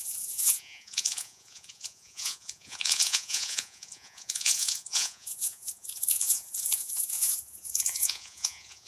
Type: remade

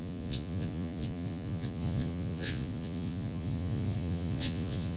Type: remade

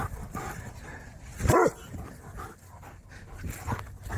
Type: recorded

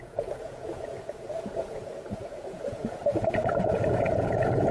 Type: remade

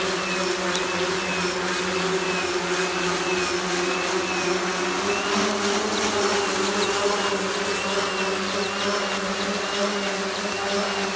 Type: recorded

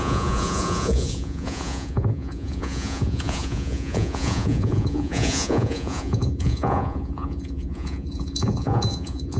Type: remade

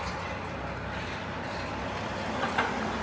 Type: recorded